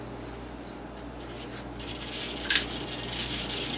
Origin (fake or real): real